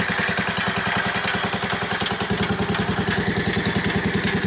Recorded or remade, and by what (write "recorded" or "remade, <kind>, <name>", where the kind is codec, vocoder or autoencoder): recorded